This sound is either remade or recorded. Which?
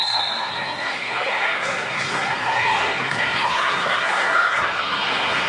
remade